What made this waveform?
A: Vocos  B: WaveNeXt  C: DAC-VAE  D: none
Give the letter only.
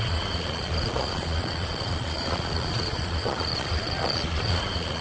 A